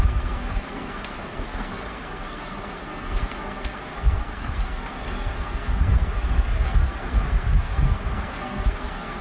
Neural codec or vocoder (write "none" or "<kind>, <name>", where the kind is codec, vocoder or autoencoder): codec, SNAC